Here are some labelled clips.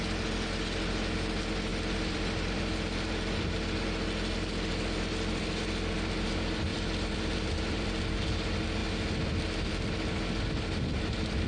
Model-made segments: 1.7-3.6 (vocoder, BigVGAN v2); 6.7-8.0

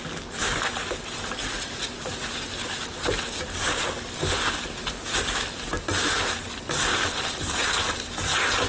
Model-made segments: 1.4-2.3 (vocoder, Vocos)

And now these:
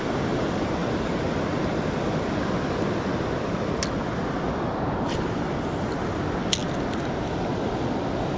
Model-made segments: none